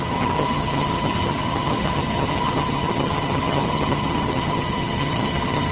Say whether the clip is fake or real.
fake